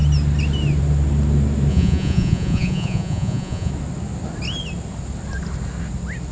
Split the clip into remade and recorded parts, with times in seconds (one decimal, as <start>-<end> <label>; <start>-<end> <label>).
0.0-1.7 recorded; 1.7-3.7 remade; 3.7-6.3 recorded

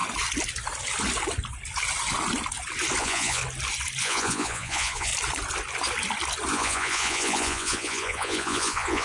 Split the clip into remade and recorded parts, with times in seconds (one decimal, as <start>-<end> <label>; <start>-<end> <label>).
0.0-3.0 recorded; 3.0-3.4 remade; 3.4-4.0 recorded; 4.0-5.1 remade; 5.1-6.5 recorded; 6.5-9.0 remade

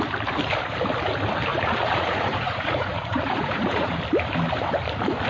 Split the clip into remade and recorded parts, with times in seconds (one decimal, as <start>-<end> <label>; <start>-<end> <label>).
0.0-1.5 recorded; 1.5-4.0 remade; 4.0-5.3 recorded

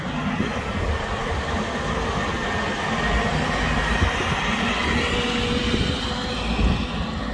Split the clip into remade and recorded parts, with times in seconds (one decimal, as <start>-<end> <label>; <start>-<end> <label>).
0.0-7.3 recorded

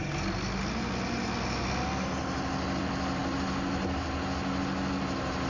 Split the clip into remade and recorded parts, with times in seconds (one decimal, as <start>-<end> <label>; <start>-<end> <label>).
0.0-5.5 recorded

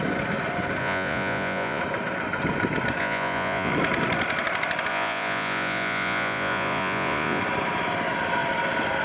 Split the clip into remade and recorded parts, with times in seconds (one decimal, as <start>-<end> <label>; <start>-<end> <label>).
0.0-0.8 recorded; 0.8-1.8 remade; 1.8-3.0 recorded; 3.0-3.7 remade; 3.7-4.9 recorded; 4.9-7.4 remade; 7.4-9.0 recorded

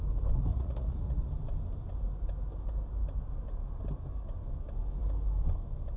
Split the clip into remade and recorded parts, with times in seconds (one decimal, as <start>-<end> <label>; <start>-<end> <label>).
0.0-0.5 recorded; 0.5-1.2 remade; 1.2-6.0 recorded